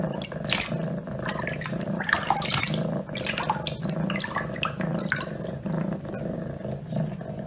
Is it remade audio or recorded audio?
recorded